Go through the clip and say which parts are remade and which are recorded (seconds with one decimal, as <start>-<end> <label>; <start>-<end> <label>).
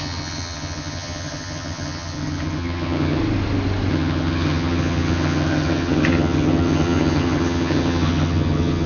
0.0-3.2 remade; 3.2-3.9 recorded; 3.9-8.9 remade